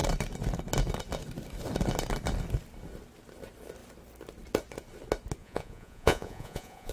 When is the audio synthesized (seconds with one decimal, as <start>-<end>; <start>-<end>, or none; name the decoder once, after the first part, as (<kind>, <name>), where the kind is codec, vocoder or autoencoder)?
5.4-6.9 (vocoder, Vocos)